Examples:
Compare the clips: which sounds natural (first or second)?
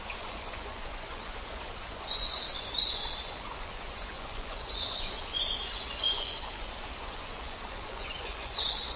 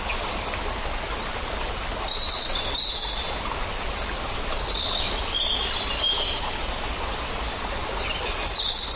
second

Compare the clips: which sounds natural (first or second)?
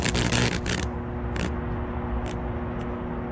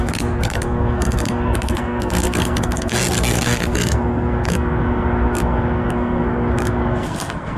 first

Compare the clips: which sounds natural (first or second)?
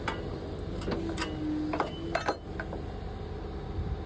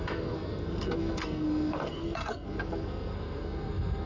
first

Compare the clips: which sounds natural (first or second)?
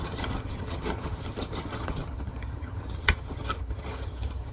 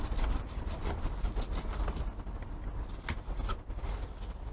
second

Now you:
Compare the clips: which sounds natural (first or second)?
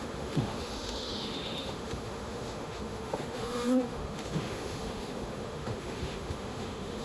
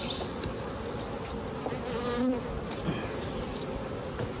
second